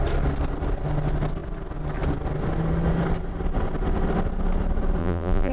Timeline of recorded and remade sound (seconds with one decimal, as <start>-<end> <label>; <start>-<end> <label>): 0.0-5.0 recorded; 5.0-5.5 remade